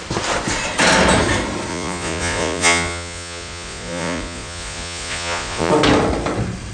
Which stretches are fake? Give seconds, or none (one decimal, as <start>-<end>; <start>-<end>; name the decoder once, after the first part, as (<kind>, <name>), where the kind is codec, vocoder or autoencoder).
1.7-5.7 (vocoder, Vocos)